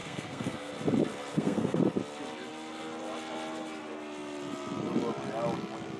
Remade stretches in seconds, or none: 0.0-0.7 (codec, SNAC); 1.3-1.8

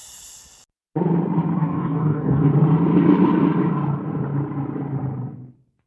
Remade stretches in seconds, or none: 1.6-2.5 (codec, DAC)

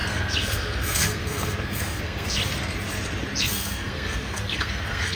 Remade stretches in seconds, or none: 0.0-2.4 (codec, SNAC); 3.4-5.2

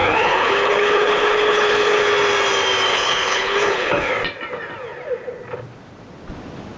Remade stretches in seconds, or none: 0.0-2.1 (codec, HILCodec); 2.9-4.1

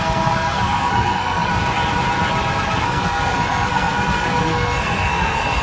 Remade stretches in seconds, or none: 0.0-1.5 (codec, SNAC); 2.8-5.6

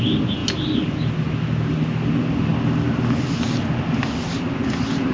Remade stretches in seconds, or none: none